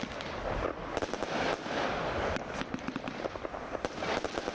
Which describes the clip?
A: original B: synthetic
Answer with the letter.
A